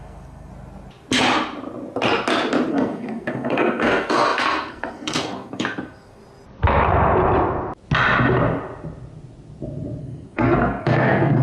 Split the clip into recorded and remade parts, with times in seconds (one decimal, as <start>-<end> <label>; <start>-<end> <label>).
0.0-0.5 remade; 0.5-2.7 recorded; 2.7-6.2 remade; 6.2-10.0 recorded; 10.0-11.4 remade